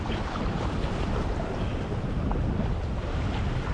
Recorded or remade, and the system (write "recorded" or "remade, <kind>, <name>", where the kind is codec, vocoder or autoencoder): remade, vocoder, BigVGAN v2